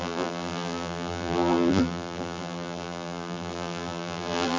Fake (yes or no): yes